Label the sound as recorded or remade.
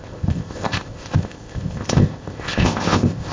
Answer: remade